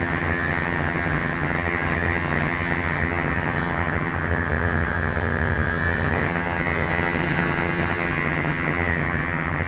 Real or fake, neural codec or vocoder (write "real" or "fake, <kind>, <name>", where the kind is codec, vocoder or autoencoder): fake, vocoder, HiFi-GAN